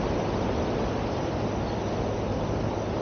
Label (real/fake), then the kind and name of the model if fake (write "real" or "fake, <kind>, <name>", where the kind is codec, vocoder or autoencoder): real